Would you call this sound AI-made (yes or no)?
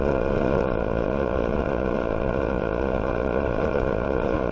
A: yes